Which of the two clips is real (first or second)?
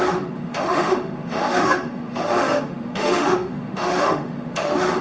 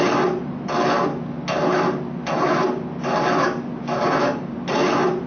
second